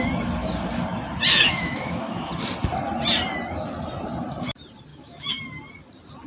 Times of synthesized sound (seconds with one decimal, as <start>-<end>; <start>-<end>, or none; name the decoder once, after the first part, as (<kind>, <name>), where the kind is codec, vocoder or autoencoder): 1.3-2.3 (autoencoder, DAC-VAE); 4.9-5.4